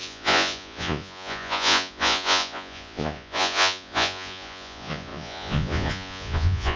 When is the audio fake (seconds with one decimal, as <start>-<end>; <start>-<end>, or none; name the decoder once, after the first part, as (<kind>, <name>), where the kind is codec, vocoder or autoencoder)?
0.0-6.8 (vocoder, Vocos)